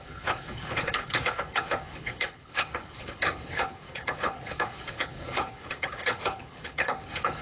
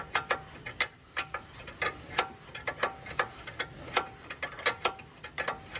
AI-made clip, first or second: first